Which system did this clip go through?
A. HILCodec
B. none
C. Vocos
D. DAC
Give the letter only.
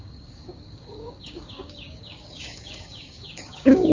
D